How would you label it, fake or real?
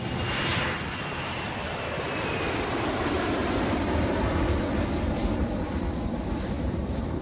fake